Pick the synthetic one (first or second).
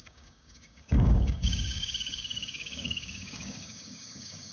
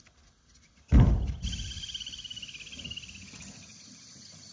first